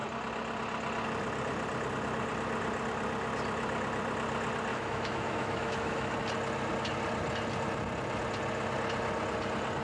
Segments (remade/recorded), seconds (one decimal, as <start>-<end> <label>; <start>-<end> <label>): 0.0-4.7 recorded; 4.7-6.1 remade; 6.1-9.8 recorded